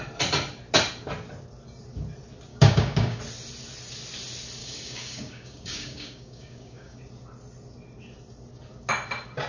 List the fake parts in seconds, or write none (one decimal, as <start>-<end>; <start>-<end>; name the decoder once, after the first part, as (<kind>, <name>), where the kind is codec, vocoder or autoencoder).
2.5-3.2 (codec, DAC); 4.6-7.0